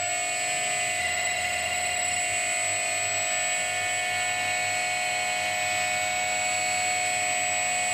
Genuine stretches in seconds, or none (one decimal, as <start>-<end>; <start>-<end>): 0.0-1.0; 2.2-7.9